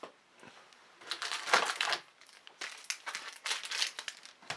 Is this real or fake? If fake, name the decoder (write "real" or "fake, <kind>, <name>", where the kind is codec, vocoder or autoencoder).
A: real